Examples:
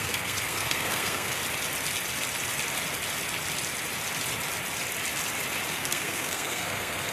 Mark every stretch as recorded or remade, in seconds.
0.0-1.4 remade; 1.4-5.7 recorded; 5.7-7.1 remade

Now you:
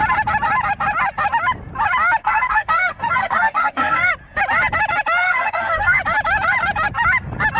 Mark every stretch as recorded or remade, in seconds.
0.0-2.2 recorded; 2.2-4.1 remade; 4.1-5.2 recorded; 5.2-6.0 remade; 6.0-7.6 recorded

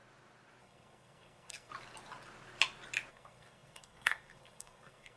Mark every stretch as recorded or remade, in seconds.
0.0-0.6 recorded; 0.6-1.7 remade; 1.7-3.1 recorded; 3.1-5.2 remade

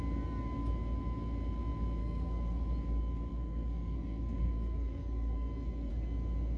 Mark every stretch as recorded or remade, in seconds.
0.0-2.0 recorded; 2.0-2.7 remade; 2.7-3.3 recorded; 3.3-5.9 remade; 5.9-6.6 recorded

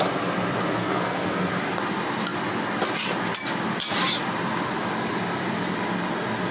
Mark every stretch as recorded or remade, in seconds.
0.0-0.8 recorded; 0.8-1.5 remade; 1.5-6.5 recorded

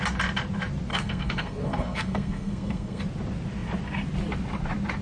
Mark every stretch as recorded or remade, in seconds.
0.0-0.9 recorded; 0.9-3.0 remade; 3.0-5.0 recorded

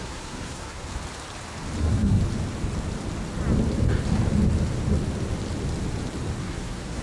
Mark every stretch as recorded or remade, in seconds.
0.0-0.9 remade; 0.9-1.8 recorded; 1.8-2.2 remade; 2.2-6.4 recorded; 6.4-7.0 remade

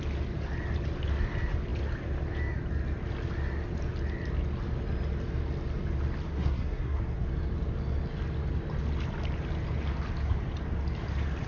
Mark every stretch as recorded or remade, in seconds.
0.0-6.3 recorded; 6.3-7.0 remade; 7.0-11.5 recorded